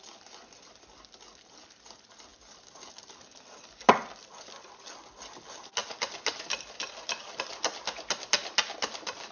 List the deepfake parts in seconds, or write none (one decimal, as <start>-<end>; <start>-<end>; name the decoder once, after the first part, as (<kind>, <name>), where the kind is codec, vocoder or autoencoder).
none